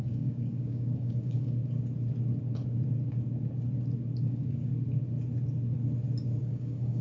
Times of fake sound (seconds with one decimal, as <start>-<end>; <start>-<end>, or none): 0.0-1.6; 4.2-4.7; 6.4-7.0